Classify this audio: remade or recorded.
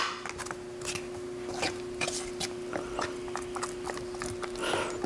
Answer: recorded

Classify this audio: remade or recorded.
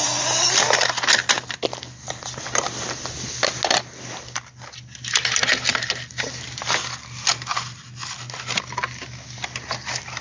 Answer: recorded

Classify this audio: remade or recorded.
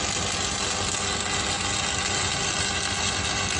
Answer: recorded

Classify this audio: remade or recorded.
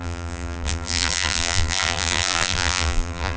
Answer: remade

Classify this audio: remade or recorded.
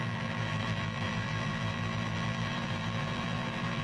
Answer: remade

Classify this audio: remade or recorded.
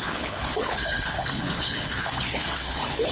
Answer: remade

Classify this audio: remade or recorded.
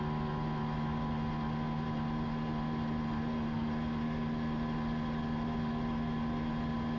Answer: recorded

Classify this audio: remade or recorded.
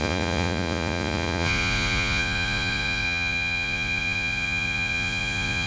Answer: remade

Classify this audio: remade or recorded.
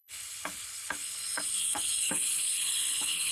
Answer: remade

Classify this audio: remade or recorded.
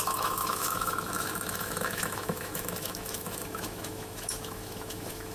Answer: remade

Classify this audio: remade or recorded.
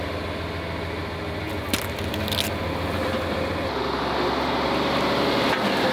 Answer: recorded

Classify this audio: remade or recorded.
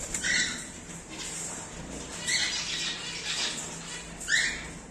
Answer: recorded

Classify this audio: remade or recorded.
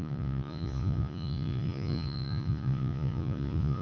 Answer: remade